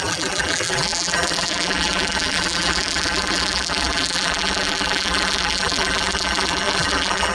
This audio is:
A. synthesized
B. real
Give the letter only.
A